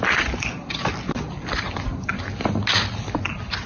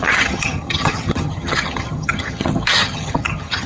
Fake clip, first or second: second